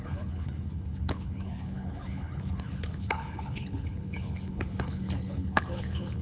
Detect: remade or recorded remade